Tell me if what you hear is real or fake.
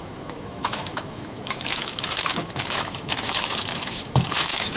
fake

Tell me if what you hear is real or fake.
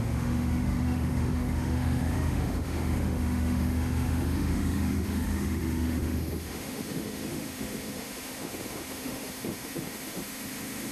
fake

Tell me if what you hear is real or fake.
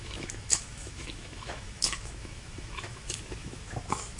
fake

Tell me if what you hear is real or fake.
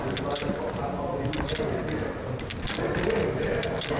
real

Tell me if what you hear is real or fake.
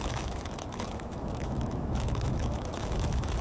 fake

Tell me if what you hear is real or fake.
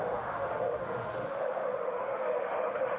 fake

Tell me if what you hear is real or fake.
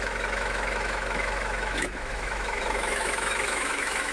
fake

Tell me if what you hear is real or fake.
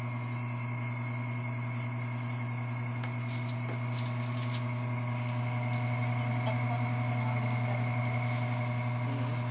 real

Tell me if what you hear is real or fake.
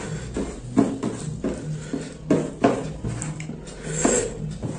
real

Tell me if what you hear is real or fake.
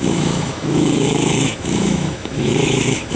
fake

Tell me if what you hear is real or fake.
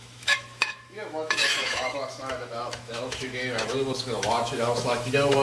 fake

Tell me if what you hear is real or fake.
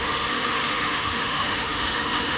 fake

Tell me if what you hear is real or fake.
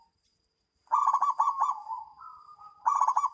real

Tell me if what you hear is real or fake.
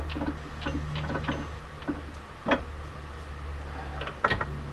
real